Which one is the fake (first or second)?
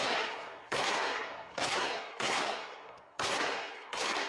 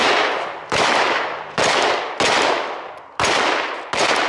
first